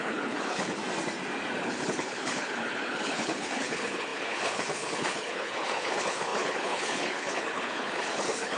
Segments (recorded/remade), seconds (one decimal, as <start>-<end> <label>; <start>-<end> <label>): 0.0-0.8 remade; 0.8-1.6 recorded; 1.6-8.6 remade